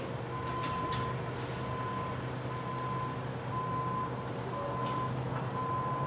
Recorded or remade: recorded